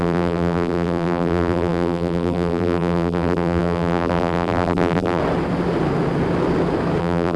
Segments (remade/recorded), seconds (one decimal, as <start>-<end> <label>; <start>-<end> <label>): 0.0-5.2 remade; 5.2-7.0 recorded; 7.0-7.4 remade